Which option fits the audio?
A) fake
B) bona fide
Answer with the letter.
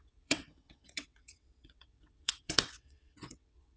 A